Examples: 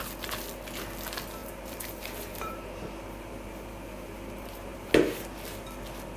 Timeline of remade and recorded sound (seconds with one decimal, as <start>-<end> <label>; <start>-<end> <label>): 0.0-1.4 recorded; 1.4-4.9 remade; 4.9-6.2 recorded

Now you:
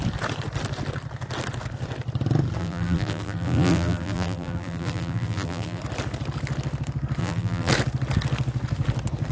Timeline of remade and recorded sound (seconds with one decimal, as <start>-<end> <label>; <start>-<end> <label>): 0.0-2.6 recorded; 2.6-5.8 remade; 5.8-7.2 recorded; 7.2-7.7 remade; 7.7-9.3 recorded

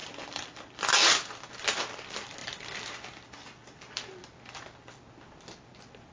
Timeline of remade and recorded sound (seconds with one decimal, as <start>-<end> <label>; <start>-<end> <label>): 0.0-0.9 remade; 0.9-6.1 recorded

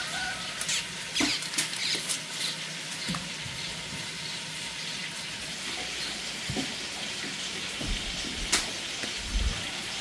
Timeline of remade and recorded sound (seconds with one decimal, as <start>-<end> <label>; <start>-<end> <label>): 0.0-1.3 remade; 1.3-2.4 recorded; 2.4-10.0 remade

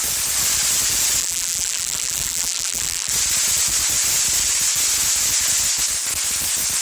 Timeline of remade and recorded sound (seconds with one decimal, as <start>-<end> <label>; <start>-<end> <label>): 0.0-1.2 recorded; 1.2-3.1 remade; 3.1-6.8 recorded

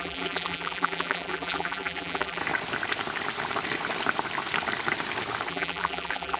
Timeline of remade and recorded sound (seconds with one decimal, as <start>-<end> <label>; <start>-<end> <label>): 0.0-2.4 remade; 2.4-5.5 recorded; 5.5-6.4 remade